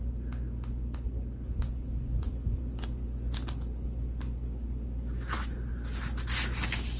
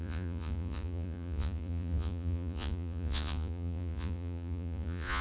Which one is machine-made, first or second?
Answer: second